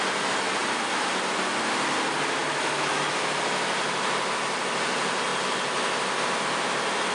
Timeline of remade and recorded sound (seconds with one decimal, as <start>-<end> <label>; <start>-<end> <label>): 0.0-2.4 recorded; 2.4-3.1 remade; 3.1-7.1 recorded